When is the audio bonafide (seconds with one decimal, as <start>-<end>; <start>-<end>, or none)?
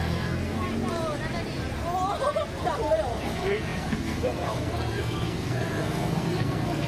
0.6-3.1